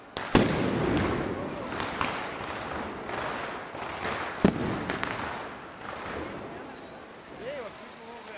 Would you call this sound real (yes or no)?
yes